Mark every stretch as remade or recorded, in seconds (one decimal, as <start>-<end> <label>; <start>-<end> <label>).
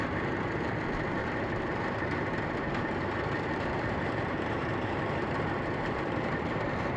0.0-1.2 recorded; 1.2-2.2 remade; 2.2-2.6 recorded; 2.6-7.0 remade